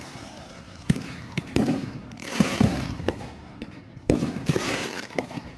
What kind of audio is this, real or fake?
fake